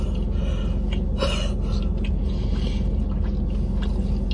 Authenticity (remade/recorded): recorded